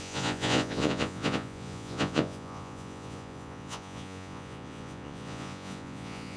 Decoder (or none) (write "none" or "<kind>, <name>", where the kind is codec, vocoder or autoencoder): vocoder, Vocos